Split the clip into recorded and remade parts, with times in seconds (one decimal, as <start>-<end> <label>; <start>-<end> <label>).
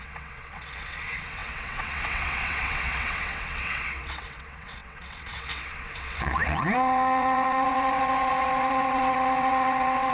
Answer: 0.0-10.1 remade